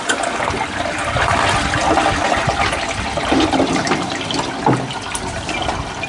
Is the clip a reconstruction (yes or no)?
no